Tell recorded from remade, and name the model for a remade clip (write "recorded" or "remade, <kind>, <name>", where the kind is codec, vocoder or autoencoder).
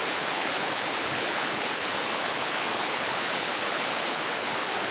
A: remade, codec, HILCodec